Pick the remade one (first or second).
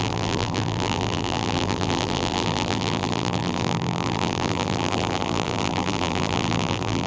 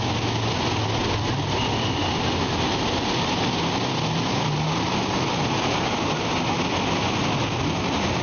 first